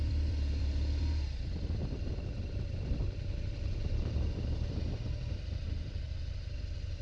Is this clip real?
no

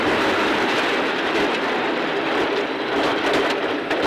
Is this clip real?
no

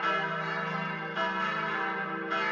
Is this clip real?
yes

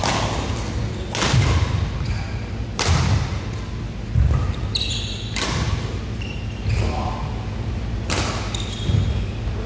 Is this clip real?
yes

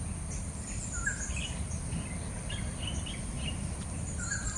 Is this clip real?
no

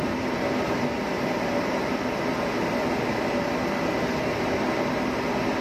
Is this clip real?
yes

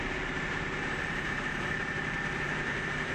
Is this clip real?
no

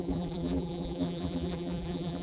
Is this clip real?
no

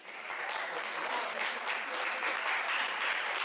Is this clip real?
no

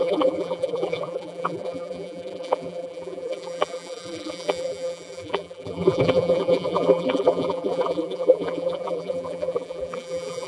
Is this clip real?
no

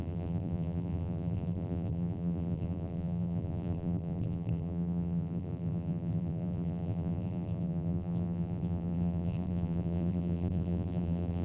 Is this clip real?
no